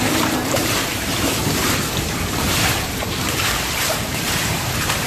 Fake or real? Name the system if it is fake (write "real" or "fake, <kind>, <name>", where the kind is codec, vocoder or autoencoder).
fake, vocoder, BigVGAN v2